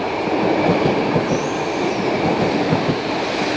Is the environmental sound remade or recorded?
recorded